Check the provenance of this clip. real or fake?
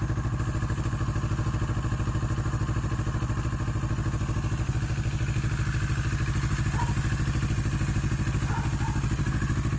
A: real